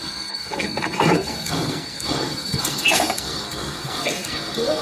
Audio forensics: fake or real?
fake